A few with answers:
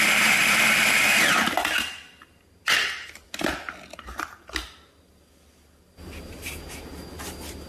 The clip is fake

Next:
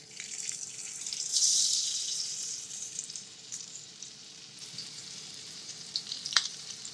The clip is fake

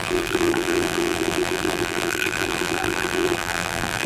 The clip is fake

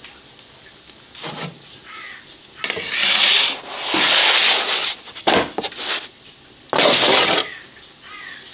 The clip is real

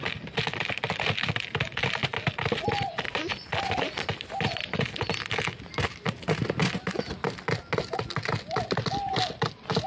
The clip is real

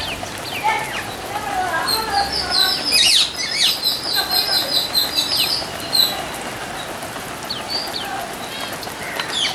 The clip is real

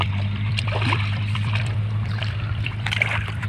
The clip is fake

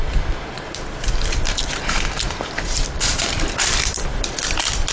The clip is fake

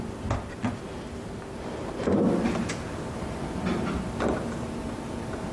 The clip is real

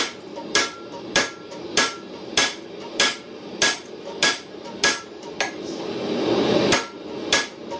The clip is fake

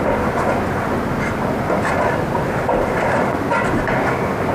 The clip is real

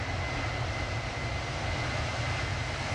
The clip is real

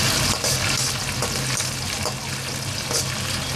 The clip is real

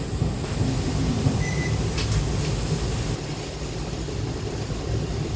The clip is real